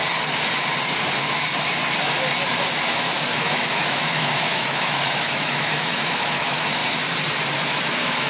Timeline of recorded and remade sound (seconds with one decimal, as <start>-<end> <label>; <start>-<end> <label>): 0.0-2.8 recorded; 2.8-6.8 remade; 6.8-7.6 recorded; 7.6-8.3 remade